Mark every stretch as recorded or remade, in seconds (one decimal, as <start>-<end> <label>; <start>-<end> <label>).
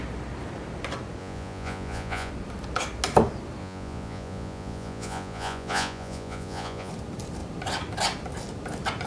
0.0-1.2 recorded; 1.2-2.3 remade; 2.3-3.6 recorded; 3.6-6.9 remade; 6.9-9.1 recorded